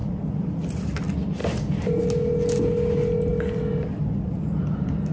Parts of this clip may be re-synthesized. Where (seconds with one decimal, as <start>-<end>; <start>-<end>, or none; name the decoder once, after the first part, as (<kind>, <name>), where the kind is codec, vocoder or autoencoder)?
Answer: none